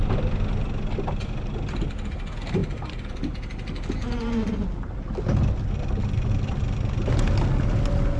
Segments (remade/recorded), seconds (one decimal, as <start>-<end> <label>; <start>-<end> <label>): 0.0-2.6 recorded; 2.6-3.2 remade; 3.2-4.6 recorded; 4.6-6.6 remade; 6.6-8.2 recorded